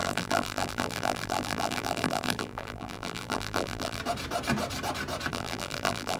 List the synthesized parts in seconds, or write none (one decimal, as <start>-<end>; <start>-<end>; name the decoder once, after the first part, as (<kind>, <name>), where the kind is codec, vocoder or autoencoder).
0.0-4.0 (vocoder, BigVGAN v2); 5.3-6.2